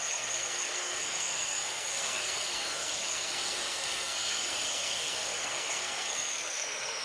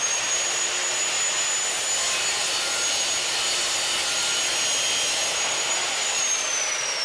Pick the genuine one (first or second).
second